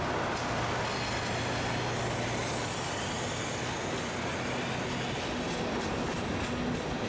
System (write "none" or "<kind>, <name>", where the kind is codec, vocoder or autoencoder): none